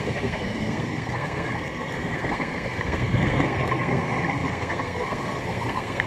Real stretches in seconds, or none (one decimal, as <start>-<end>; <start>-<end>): none